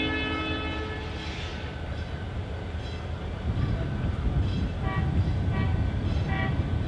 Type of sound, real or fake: real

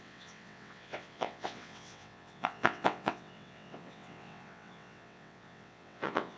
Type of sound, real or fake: fake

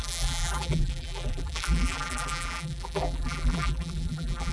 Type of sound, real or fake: fake